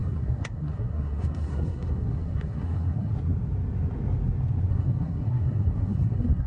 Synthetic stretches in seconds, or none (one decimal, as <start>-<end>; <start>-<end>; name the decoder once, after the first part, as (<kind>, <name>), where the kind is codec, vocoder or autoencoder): 0.0-3.1 (codec, SNAC); 4.7-6.5

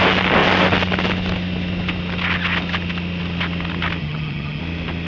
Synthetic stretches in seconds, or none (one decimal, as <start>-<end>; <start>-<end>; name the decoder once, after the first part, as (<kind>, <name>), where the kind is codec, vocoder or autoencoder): 4.0-4.6 (vocoder, HiFi-GAN)

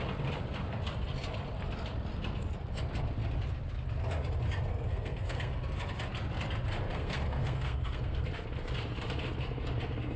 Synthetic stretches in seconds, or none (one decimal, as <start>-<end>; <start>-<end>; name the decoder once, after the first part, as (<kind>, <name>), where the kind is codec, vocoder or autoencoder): 4.7-5.5 (codec, SNAC); 6.9-8.3

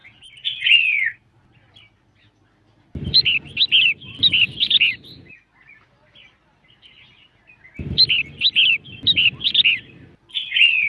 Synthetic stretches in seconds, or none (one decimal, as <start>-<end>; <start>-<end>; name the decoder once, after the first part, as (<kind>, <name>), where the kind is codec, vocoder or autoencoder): none

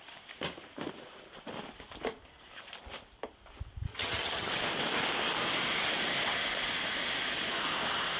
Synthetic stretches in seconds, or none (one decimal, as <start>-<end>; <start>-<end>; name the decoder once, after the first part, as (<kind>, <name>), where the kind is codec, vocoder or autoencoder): 3.9-4.5 (vocoder, HiFi-GAN)